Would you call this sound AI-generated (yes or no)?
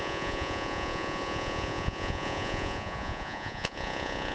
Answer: yes